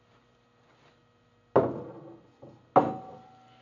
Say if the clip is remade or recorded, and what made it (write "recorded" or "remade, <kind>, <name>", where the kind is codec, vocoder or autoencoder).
recorded